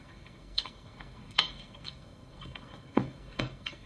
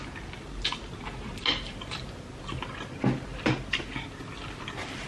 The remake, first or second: first